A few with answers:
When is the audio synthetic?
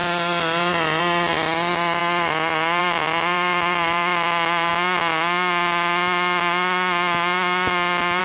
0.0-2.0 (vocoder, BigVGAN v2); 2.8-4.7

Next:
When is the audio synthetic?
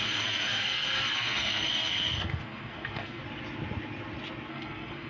0.0-3.2 (codec, SNAC); 4.5-5.1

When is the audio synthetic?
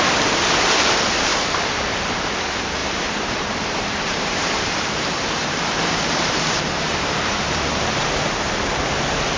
2.8-7.4 (vocoder, BigVGAN v2)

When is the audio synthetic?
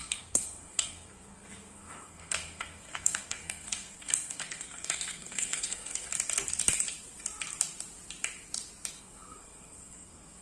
0.0-6.1 (codec, SNAC); 9.0-10.4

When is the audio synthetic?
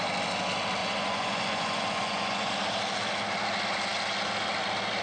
0.8-2.5 (vocoder, Vocos)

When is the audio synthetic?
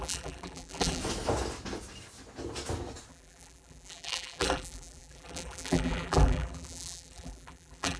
0.0-1.0 (vocoder, BigVGAN v2); 3.1-8.0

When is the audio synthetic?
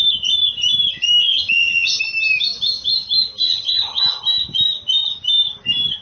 1.2-2.0 (vocoder, HiFi-GAN); 3.4-4.0